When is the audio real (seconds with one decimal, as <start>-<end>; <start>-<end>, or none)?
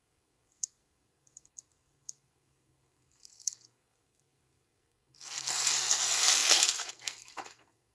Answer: none